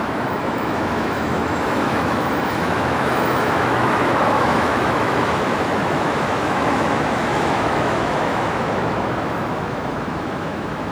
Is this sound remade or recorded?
remade